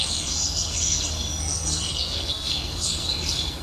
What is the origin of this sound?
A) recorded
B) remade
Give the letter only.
B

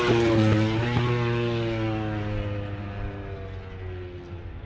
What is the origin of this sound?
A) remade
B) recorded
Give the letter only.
B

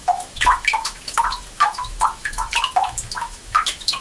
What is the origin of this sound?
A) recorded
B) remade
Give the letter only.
B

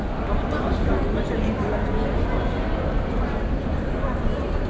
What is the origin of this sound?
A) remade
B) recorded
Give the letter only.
B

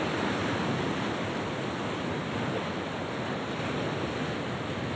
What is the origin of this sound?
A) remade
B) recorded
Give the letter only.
B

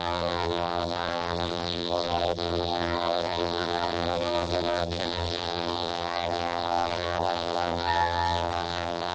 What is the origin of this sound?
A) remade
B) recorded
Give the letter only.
A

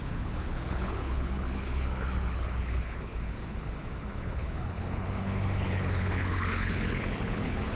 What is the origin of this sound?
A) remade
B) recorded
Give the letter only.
A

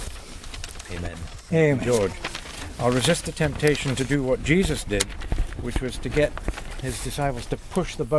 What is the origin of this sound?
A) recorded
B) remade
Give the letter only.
A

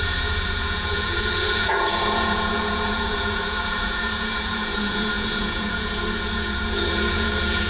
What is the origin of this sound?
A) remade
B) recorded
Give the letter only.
A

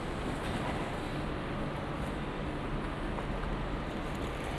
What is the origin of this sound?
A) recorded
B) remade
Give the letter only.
A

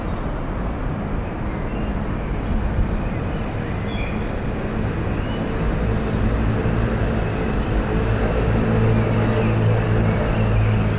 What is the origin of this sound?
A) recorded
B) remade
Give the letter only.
A